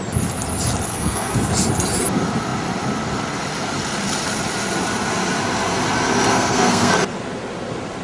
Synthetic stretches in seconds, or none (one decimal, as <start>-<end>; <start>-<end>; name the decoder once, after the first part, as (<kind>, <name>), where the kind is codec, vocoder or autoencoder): 0.9-1.5 (codec, SNAC); 6.3-6.9